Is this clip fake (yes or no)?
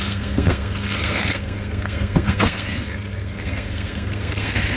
yes